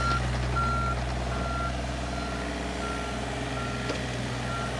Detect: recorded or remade recorded